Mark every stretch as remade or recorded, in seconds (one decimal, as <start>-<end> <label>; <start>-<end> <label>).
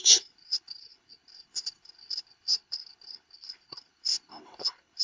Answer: 0.0-5.0 remade